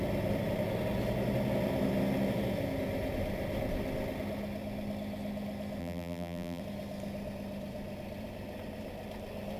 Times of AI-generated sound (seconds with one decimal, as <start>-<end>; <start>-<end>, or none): 5.8-6.6